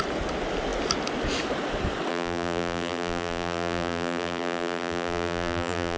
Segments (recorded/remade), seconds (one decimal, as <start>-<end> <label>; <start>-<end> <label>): 0.0-2.1 recorded; 2.1-6.0 remade